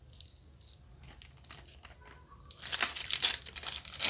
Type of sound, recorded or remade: recorded